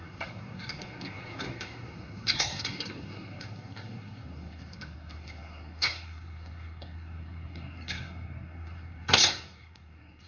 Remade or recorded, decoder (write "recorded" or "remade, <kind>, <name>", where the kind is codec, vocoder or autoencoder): remade, codec, SNAC